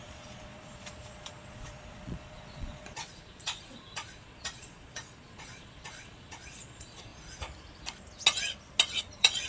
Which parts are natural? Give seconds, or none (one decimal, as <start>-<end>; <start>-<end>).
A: 7.1-9.0